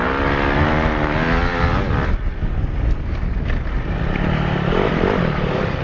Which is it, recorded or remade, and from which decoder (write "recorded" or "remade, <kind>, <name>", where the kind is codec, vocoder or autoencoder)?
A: recorded